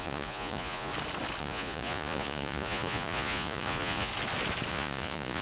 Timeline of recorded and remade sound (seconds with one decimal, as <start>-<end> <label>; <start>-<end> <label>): 0.0-0.9 remade; 0.9-1.4 recorded; 1.4-4.1 remade; 4.1-4.7 recorded; 4.7-5.4 remade